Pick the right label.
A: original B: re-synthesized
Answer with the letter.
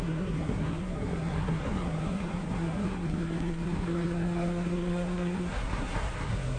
B